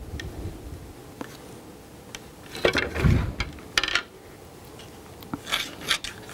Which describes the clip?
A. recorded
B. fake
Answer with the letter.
A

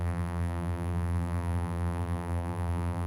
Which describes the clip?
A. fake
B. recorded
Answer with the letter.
A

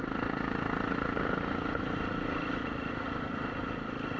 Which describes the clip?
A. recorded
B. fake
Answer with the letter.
A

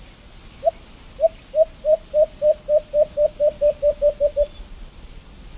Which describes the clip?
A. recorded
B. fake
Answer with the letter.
A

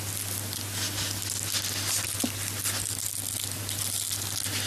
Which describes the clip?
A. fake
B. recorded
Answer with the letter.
B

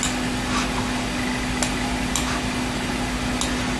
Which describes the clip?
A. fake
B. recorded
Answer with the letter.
B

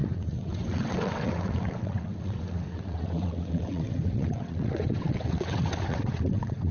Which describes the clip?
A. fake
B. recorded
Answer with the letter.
A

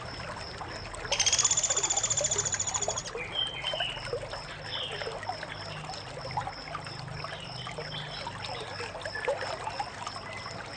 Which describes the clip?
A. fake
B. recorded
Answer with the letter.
B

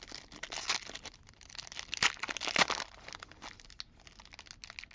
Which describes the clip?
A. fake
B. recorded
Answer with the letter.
B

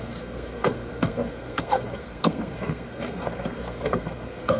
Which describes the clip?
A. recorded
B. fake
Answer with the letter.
B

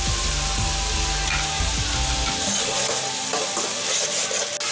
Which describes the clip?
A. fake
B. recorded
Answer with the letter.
B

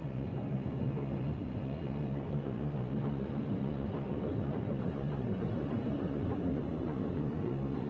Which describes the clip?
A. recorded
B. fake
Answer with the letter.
B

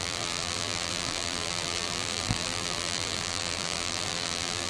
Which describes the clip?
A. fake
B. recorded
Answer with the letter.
A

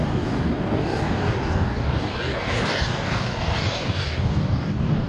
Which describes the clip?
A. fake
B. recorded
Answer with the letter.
A